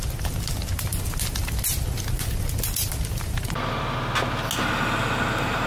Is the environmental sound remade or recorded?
recorded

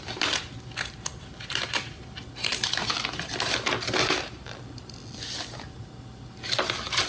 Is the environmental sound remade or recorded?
recorded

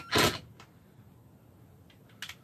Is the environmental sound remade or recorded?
recorded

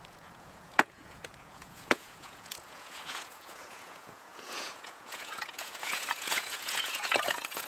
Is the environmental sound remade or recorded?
remade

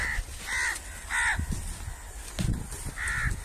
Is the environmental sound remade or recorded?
recorded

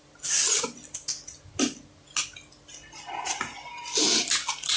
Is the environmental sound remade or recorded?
recorded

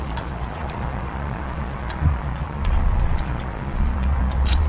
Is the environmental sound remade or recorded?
remade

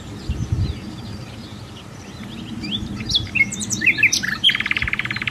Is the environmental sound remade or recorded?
remade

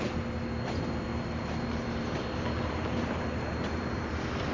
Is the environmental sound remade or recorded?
recorded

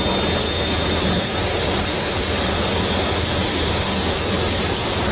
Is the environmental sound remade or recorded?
recorded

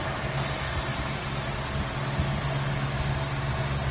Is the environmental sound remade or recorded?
recorded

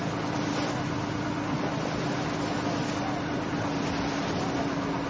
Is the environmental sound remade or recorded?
recorded